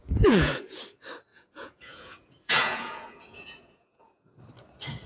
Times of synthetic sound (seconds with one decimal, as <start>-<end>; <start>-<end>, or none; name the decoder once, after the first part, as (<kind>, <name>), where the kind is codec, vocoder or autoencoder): 0.0-0.8 (vocoder, Vocos); 1.3-4.4